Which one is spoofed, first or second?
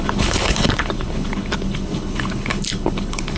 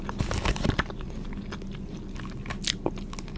first